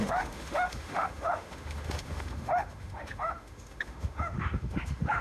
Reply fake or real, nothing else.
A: fake